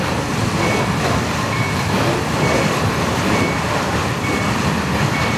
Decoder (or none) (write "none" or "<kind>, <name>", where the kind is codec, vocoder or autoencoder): vocoder, BigVGAN v2